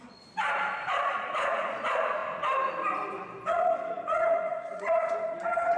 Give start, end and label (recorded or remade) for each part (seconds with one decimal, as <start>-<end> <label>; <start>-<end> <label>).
0.0-2.2 remade; 2.2-3.5 recorded; 3.5-5.8 remade

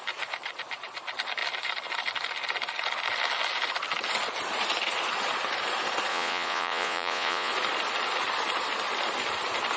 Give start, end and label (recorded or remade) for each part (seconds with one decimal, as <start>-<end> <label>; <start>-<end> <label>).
0.0-6.1 recorded; 6.1-7.5 remade; 7.5-9.8 recorded

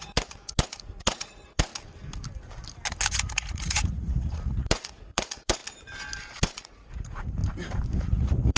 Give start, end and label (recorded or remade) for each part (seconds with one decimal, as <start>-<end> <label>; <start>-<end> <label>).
0.0-1.7 remade; 1.7-3.1 recorded; 3.1-5.6 remade; 5.6-6.3 recorded; 6.3-7.4 remade; 7.4-8.0 recorded; 8.0-8.6 remade

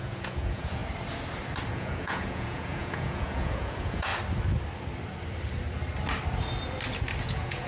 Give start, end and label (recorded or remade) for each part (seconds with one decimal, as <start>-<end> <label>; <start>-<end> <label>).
0.0-0.8 remade; 0.8-1.7 recorded; 1.7-4.1 remade; 4.1-7.2 recorded; 7.2-7.7 remade

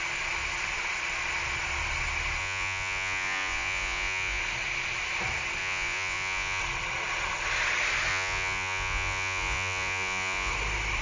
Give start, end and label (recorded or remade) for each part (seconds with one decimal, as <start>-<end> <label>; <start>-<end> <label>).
0.0-2.4 recorded; 2.4-4.4 remade; 4.4-5.6 recorded; 5.6-6.6 remade; 6.6-8.1 recorded; 8.1-10.5 remade; 10.5-11.0 recorded

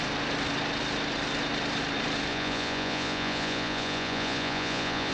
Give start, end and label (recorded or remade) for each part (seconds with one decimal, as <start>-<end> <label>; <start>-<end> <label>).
0.0-2.3 recorded; 2.3-5.1 remade